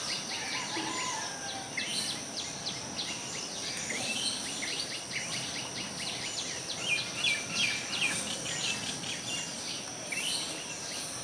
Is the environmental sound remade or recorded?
recorded